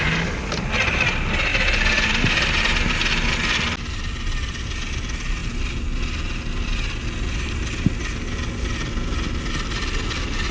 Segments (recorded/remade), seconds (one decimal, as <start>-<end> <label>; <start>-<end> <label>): 0.0-1.5 recorded; 1.5-2.9 remade; 2.9-10.5 recorded